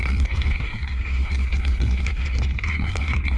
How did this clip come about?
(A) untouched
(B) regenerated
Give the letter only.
B